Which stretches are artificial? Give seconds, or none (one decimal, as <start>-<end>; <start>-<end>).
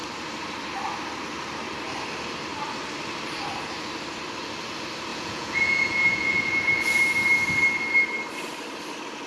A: 5.1-7.0